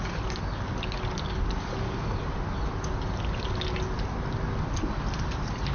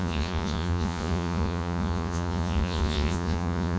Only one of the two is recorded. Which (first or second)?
first